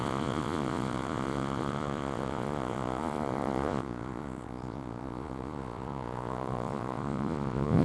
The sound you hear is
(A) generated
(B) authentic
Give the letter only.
A